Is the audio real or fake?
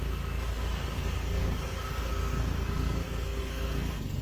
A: fake